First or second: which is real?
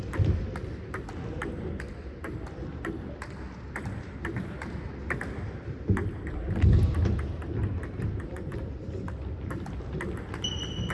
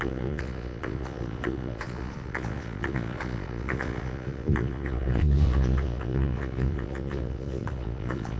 first